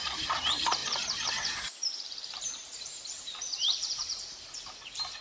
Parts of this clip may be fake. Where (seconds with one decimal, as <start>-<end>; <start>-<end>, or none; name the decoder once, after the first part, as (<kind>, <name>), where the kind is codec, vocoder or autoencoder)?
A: 0.0-5.2 (vocoder, BigVGAN v2)